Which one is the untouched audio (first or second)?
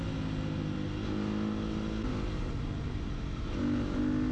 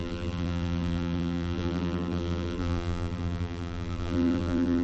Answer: first